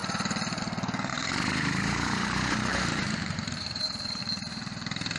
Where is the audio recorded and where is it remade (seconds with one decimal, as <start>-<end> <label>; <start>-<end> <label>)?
0.0-0.6 remade; 0.6-1.1 recorded; 1.1-4.2 remade; 4.2-5.2 recorded